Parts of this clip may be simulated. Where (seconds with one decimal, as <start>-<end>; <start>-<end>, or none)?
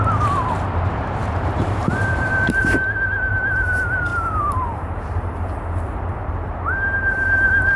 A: 0.0-7.8